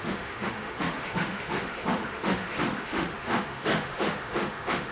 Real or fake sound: fake